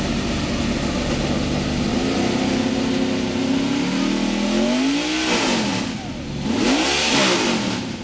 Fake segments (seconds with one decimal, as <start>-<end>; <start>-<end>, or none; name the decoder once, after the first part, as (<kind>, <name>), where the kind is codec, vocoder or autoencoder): none